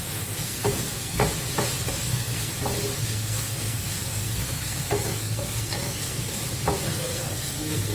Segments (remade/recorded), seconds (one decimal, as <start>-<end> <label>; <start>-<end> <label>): 0.0-1.2 remade; 1.2-1.9 recorded; 1.9-2.5 remade; 2.5-3.0 recorded; 3.0-6.4 remade; 6.4-6.9 recorded; 6.9-7.9 remade